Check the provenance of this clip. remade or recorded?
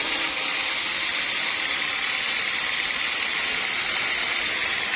recorded